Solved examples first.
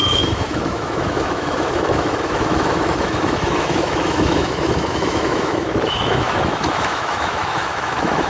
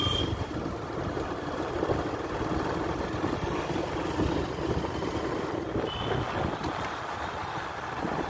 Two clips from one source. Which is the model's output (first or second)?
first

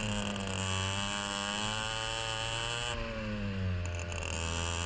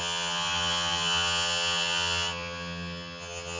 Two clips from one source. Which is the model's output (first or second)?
second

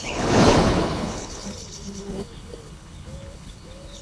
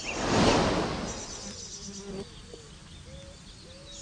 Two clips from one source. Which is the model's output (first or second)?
first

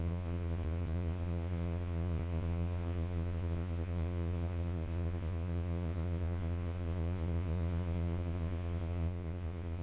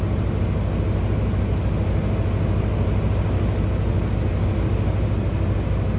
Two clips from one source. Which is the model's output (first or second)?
first